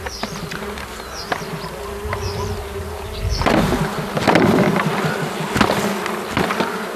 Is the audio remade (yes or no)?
no